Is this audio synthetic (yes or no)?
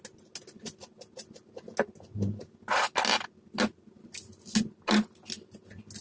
no